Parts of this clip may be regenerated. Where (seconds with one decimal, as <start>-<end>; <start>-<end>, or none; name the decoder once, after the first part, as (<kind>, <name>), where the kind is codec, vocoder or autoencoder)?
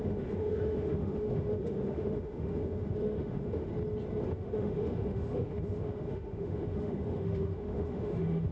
0.0-3.7 (autoencoder, DAC-VAE); 4.3-8.5